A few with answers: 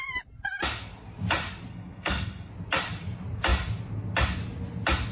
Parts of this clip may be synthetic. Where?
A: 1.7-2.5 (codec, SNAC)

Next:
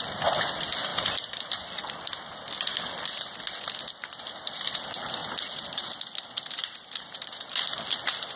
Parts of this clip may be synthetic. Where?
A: 0.9-1.5 (vocoder, BigVGAN v2); 5.2-6.0; 6.6-7.5